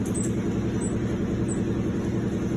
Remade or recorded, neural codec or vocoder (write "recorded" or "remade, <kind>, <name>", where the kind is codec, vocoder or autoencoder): recorded